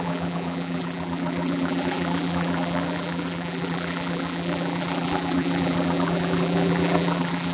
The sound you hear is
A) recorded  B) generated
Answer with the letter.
B